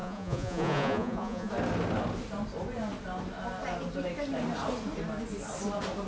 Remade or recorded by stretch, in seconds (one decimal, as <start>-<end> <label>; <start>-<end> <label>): 0.0-1.5 remade; 1.5-6.1 recorded